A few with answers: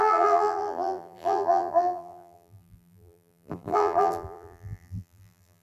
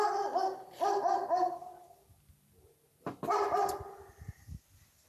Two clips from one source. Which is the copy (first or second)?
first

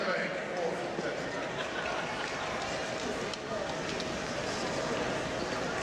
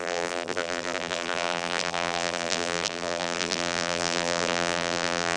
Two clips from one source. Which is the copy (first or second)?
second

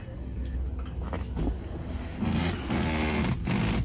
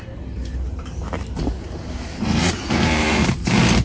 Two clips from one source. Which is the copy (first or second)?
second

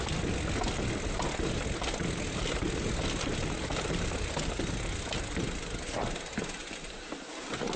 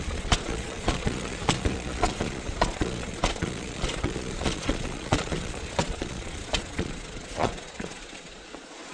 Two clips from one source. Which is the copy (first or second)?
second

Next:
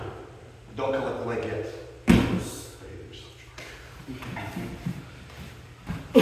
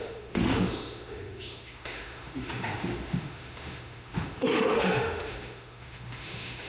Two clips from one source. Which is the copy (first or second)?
second